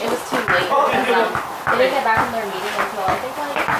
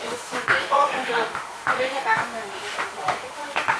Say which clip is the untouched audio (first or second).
first